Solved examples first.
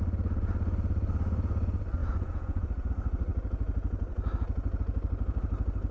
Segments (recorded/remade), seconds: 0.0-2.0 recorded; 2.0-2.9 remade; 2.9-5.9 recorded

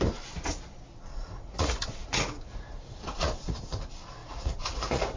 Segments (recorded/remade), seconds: 0.0-1.1 recorded; 1.1-3.8 remade; 3.8-4.2 recorded; 4.2-5.2 remade